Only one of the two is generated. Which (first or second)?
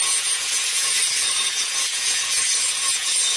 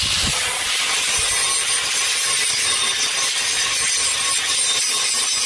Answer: first